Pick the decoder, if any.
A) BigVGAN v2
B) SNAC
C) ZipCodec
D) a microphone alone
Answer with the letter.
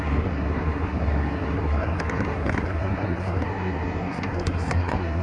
B